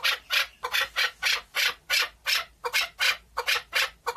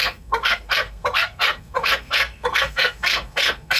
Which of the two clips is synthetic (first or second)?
second